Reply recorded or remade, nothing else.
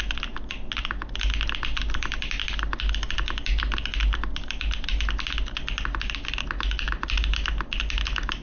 recorded